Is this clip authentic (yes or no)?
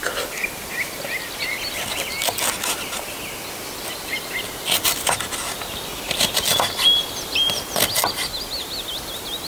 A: yes